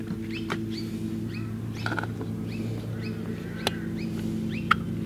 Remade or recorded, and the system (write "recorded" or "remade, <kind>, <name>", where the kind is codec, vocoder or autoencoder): recorded